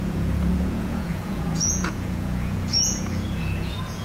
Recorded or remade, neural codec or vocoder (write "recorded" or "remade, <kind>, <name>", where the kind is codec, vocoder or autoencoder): remade, vocoder, Vocos